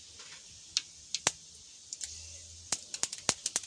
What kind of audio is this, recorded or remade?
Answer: recorded